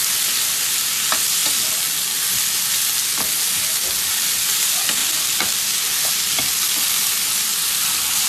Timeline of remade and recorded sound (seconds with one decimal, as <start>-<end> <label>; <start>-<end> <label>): 0.0-8.3 recorded